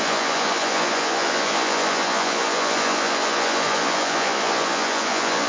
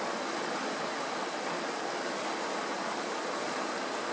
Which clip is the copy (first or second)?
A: first